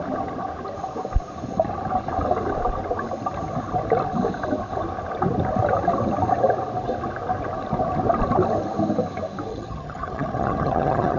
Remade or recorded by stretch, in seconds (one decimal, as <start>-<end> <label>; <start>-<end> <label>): 0.0-9.5 recorded; 9.5-11.2 remade